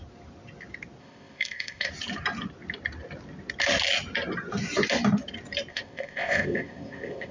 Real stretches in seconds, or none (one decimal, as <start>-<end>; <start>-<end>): 0.0-1.0; 1.9-5.7